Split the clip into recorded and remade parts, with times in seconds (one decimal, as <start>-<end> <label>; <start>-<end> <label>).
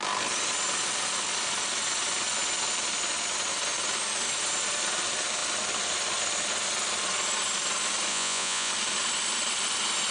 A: 0.0-8.1 recorded; 8.1-8.7 remade; 8.7-10.1 recorded